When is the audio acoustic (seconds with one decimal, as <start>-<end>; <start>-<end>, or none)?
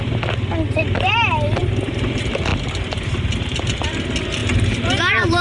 0.0-4.4